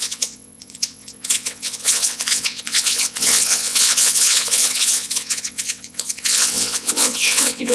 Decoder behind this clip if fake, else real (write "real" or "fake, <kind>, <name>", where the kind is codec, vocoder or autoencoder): fake, vocoder, WaveNeXt